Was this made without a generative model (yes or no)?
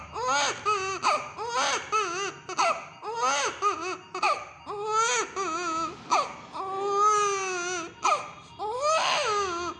yes